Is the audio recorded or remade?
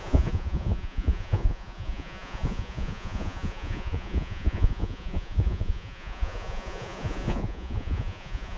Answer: remade